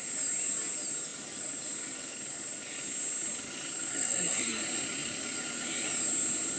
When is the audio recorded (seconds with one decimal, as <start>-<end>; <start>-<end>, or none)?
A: 0.0-3.9; 4.6-6.6